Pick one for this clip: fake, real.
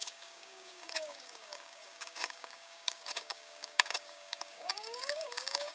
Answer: fake